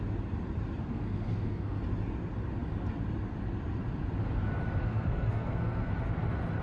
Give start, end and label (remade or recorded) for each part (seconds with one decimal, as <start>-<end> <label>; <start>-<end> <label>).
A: 0.0-0.8 recorded; 0.8-1.8 remade; 1.8-4.8 recorded; 4.8-5.9 remade; 5.9-6.6 recorded